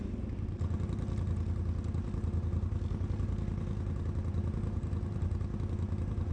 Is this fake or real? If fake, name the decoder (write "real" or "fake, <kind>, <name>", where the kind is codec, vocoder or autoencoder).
real